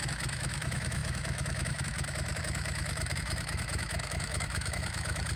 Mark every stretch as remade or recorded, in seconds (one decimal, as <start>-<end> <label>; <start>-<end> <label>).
0.0-5.4 remade